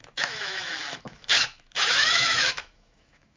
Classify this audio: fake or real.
fake